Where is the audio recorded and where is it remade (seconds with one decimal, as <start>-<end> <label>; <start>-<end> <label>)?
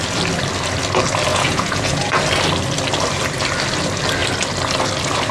0.0-1.3 recorded; 1.3-2.2 remade; 2.2-5.3 recorded